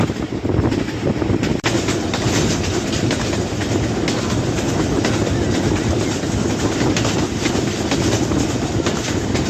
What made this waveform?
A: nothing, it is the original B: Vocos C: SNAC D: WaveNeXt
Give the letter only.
A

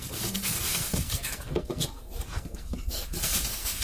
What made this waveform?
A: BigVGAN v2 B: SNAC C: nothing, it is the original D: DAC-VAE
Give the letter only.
B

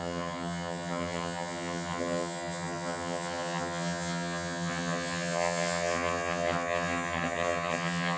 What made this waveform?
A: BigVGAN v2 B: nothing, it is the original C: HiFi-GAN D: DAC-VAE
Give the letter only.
C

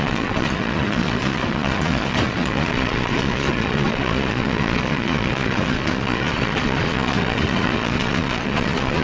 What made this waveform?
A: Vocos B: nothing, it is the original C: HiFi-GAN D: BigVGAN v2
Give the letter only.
A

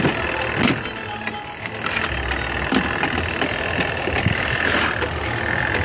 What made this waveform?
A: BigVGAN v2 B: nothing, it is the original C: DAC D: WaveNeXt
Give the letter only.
B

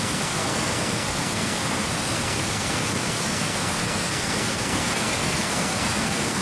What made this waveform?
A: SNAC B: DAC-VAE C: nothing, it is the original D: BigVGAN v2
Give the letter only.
A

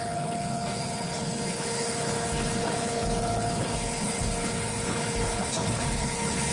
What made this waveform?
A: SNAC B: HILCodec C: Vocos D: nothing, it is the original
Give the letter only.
B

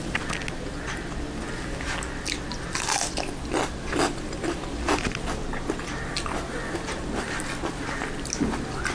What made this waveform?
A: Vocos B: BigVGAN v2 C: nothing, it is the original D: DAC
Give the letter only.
C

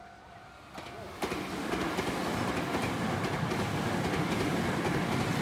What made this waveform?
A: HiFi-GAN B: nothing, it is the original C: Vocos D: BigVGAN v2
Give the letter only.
B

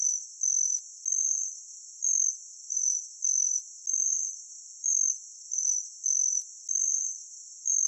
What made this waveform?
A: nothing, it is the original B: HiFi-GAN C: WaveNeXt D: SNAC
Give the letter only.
A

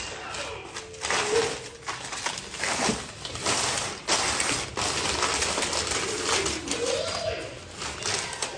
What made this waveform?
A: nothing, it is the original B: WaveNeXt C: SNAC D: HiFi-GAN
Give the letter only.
A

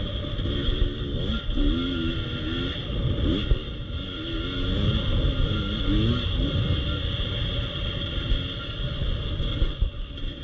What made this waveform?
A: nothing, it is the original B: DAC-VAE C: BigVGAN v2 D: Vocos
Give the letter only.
A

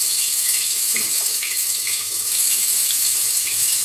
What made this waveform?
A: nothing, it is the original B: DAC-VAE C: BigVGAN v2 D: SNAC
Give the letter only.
B